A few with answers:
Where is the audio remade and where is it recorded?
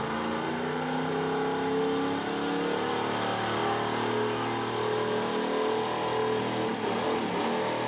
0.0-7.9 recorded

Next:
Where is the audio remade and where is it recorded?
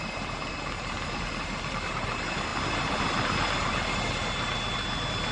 0.0-5.3 recorded